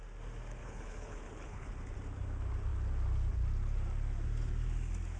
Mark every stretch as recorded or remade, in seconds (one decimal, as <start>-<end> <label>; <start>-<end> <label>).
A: 0.0-0.6 recorded; 0.6-1.7 remade; 1.7-5.2 recorded